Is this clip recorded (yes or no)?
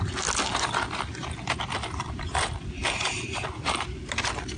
yes